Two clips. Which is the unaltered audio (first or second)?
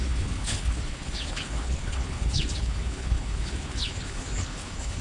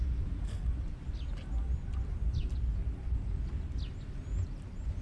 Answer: second